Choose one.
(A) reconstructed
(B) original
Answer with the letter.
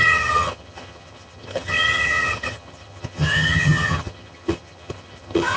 A